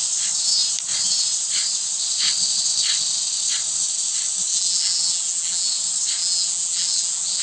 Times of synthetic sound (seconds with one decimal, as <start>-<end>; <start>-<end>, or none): 4.5-5.7; 6.2-7.4